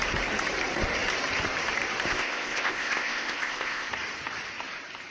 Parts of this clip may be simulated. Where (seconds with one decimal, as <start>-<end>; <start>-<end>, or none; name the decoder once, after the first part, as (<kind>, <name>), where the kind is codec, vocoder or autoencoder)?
2.1-3.9 (codec, ZipCodec)